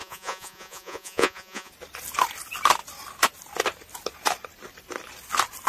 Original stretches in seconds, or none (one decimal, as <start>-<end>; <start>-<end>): 1.7-5.7